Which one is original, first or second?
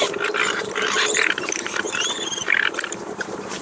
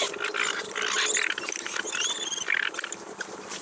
second